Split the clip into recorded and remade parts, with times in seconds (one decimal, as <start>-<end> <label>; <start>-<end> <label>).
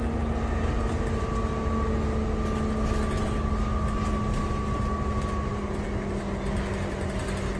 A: 0.0-7.6 recorded